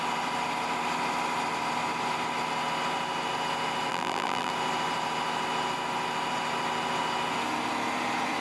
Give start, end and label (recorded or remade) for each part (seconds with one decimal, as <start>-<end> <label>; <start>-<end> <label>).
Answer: 0.0-3.9 recorded; 3.9-4.5 remade; 4.5-8.4 recorded